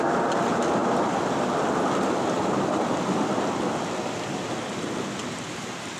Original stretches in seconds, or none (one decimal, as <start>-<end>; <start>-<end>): 0.0-6.0